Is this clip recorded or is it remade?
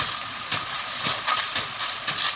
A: recorded